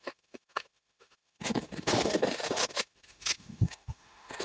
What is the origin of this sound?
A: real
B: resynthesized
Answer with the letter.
B